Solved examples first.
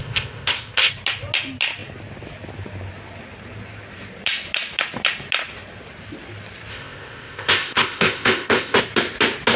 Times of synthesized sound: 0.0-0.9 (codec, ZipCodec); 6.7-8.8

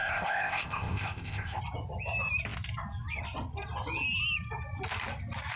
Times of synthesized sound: 0.0-1.6 (codec, ZipCodec)

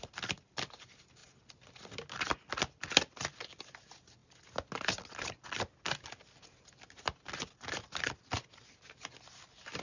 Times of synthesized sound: none

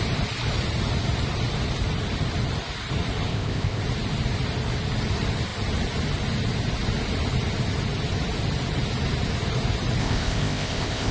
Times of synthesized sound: 3.3-3.8 (codec, ZipCodec); 10.0-11.1

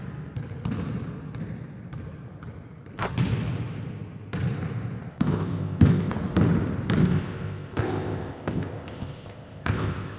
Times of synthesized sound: 5.1-6.1 (codec, ZipCodec); 7.0-10.2

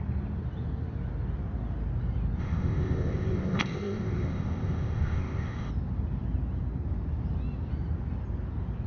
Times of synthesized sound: 2.4-5.7 (codec, ZipCodec)